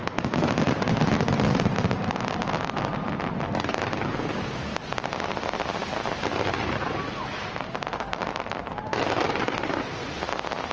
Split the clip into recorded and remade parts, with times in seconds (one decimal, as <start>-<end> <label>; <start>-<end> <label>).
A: 0.0-10.7 recorded